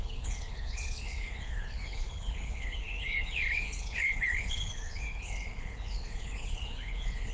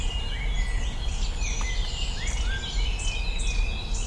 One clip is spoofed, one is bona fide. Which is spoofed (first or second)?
first